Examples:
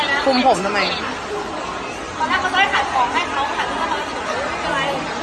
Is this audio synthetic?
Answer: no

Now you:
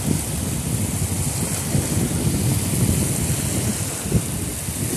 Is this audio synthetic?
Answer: no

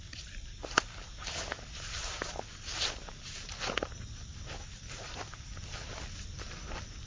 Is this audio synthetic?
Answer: no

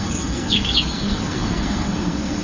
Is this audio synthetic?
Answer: yes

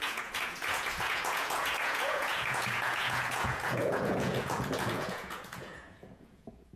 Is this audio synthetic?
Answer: yes